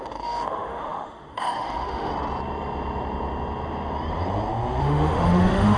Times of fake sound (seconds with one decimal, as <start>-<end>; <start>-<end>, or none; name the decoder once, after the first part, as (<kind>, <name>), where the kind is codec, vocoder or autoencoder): 0.0-2.1 (autoencoder, DAC-VAE); 4.8-5.8